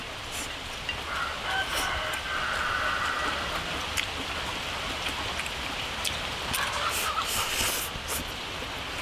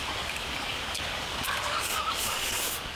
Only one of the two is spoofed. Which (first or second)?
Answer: second